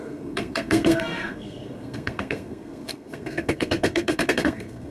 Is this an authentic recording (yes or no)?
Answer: no